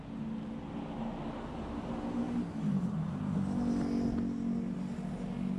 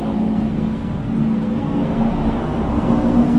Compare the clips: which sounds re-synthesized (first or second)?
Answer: second